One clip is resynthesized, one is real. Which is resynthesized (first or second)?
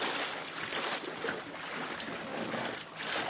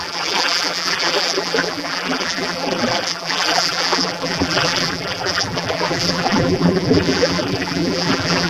second